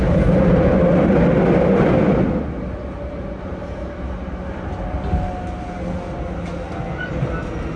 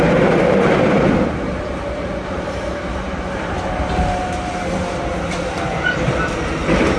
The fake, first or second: second